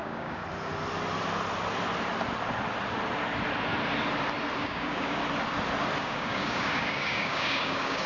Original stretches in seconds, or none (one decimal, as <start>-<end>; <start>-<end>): 0.4-4.6; 5.2-6.0